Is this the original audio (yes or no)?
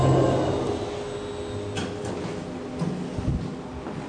yes